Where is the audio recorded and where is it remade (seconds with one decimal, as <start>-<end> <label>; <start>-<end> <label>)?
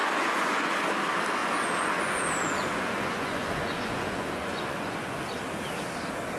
0.0-0.7 remade; 0.7-1.4 recorded; 1.4-5.2 remade; 5.2-6.4 recorded